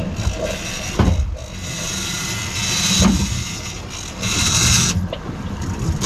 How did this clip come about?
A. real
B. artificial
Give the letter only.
A